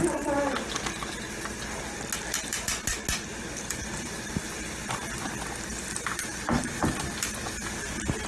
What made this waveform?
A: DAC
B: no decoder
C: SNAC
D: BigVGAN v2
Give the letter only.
B